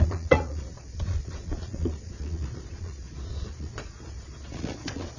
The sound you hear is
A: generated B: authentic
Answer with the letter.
A